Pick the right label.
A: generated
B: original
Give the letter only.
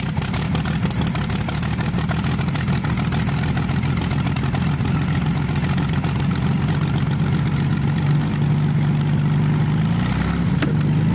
B